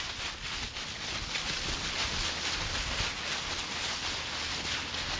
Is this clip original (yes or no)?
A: yes